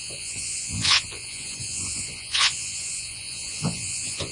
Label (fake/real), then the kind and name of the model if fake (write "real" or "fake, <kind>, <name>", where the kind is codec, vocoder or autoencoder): fake, vocoder, Vocos